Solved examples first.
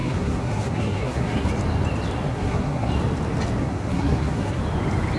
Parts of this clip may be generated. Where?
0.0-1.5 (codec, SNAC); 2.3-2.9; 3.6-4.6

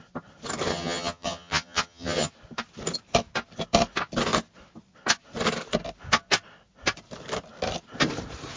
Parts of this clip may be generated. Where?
0.7-2.3 (vocoder, HiFi-GAN)

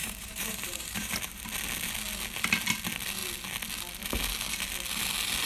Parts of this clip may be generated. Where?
0.0-1.4 (vocoder, BigVGAN v2)

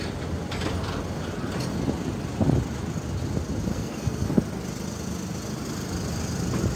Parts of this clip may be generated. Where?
3.7-4.4 (codec, SNAC)

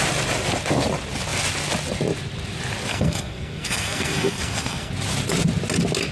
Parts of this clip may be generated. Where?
2.9-4.9 (codec, SNAC)

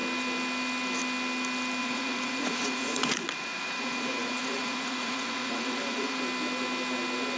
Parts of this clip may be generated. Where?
1.8-6.2 (vocoder, Vocos)

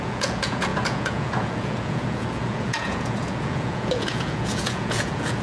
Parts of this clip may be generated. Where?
0.0-5.4 (vocoder, Vocos)

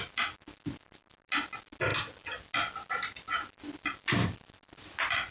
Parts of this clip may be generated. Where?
none